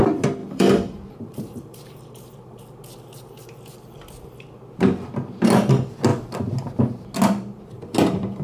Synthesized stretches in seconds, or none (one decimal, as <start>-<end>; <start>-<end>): 0.4-2.6

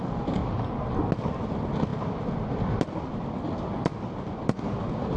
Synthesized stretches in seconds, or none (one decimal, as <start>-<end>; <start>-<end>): none

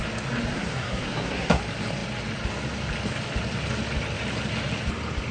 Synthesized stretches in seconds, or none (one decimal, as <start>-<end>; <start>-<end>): 0.5-1.6

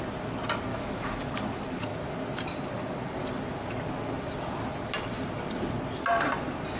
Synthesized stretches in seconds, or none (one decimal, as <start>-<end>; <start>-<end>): 0.7-1.3

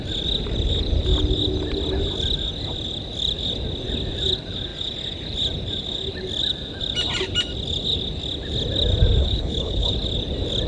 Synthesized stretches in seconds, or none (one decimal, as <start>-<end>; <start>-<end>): 9.2-9.9

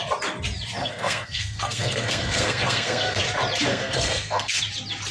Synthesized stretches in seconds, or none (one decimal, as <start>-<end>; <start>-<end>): 0.8-3.2; 3.7-4.6

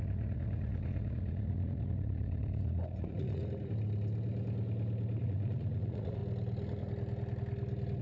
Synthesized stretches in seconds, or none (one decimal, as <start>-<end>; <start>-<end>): 0.0-3.4; 5.2-6.2